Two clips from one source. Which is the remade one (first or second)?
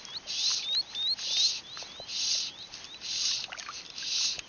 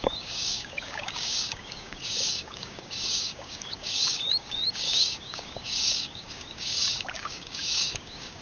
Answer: second